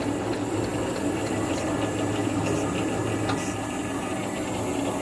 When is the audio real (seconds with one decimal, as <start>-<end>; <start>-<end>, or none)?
0.0-5.0